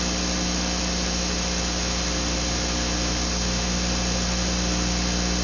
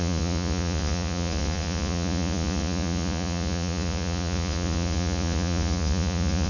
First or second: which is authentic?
first